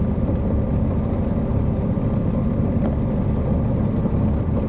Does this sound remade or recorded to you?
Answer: recorded